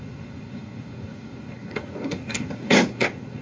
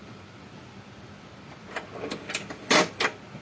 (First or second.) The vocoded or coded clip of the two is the first